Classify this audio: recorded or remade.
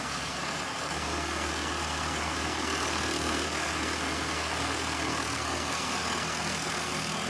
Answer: remade